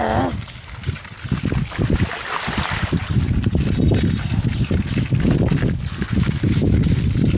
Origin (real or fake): real